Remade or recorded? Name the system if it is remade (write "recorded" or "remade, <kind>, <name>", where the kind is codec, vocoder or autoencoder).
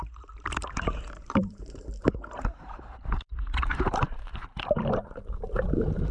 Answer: remade, vocoder, BigVGAN v2